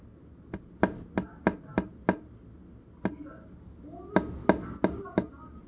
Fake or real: real